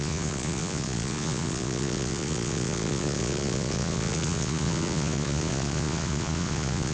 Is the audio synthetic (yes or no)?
yes